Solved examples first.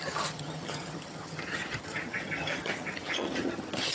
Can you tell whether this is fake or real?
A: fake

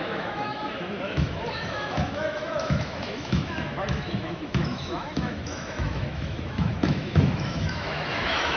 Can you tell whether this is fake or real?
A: fake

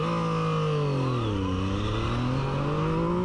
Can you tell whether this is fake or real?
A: real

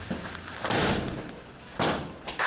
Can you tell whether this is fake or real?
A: fake